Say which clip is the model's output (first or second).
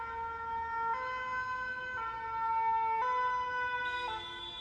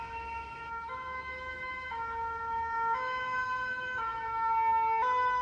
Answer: second